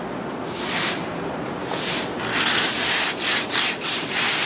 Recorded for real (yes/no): yes